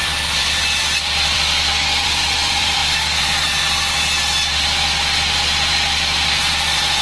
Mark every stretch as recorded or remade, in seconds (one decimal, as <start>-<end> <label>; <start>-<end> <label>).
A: 0.0-2.8 remade; 2.8-7.0 recorded